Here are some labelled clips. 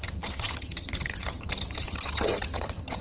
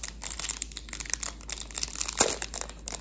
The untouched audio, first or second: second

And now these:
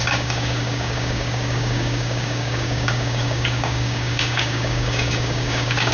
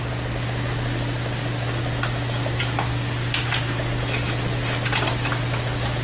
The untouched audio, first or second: second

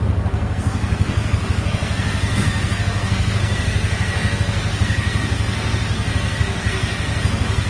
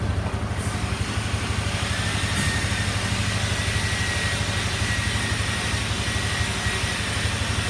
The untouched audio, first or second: second